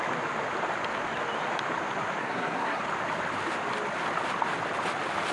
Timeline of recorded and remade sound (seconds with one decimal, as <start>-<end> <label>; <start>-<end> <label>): 0.0-2.2 recorded; 2.2-2.8 remade; 2.8-5.3 recorded